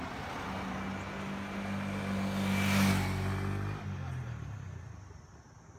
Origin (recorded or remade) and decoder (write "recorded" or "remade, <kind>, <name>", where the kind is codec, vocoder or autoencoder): recorded